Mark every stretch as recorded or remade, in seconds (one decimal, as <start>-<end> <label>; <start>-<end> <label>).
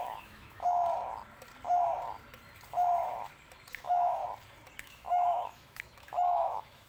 0.0-0.8 remade; 0.8-3.7 recorded; 3.7-4.2 remade; 4.2-4.8 recorded; 4.8-6.9 remade